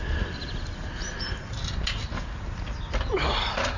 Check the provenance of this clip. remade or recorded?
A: recorded